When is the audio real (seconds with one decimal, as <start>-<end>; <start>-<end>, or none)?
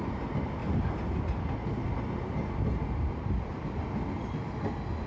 0.0-5.1